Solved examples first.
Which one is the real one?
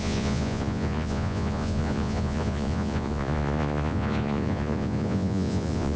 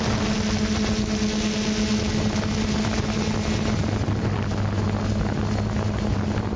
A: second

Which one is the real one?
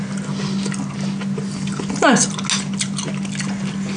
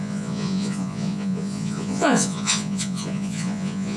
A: first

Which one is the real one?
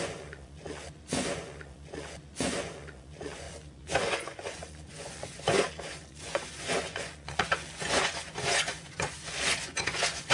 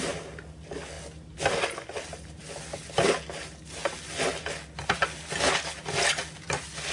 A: second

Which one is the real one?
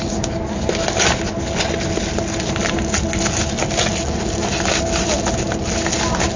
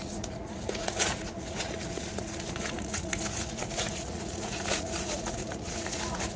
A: first